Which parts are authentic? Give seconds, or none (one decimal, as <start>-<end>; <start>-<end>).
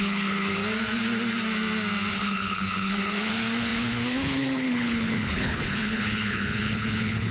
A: 0.6-2.1